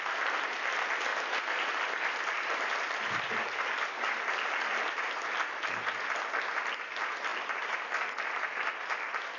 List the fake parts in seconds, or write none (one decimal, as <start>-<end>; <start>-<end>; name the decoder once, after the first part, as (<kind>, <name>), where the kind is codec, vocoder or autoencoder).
1.1-5.1 (vocoder, BigVGAN v2); 7.3-7.8